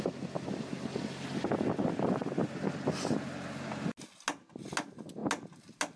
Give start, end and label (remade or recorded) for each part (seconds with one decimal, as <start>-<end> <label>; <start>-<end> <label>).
0.0-6.0 recorded